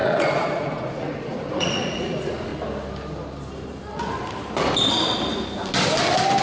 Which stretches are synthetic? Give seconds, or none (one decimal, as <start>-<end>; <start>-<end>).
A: 0.0-2.5